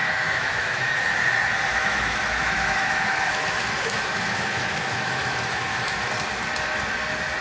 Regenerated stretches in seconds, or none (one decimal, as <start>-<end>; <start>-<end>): 0.0-1.0; 1.7-6.1